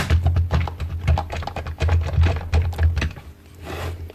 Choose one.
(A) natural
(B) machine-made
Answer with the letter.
A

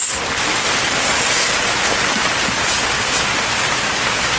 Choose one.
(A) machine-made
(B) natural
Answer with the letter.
B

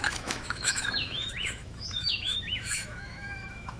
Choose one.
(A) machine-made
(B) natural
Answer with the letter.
A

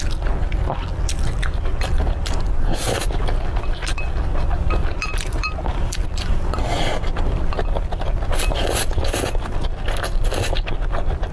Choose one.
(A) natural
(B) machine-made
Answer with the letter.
A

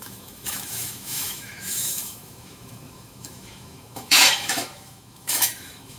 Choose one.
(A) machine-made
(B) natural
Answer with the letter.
A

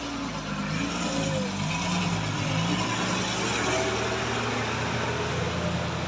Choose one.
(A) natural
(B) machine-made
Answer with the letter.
A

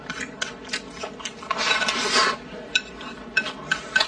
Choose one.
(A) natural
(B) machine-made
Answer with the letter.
A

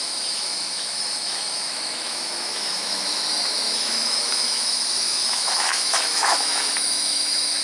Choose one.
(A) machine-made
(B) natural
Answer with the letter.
A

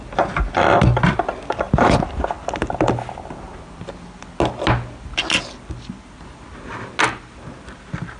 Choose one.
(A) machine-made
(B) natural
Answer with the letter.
B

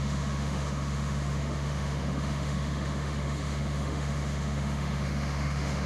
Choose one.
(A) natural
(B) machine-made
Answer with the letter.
B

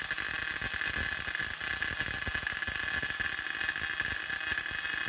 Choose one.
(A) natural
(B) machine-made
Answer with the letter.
A